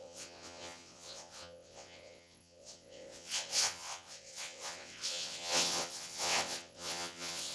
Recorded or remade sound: remade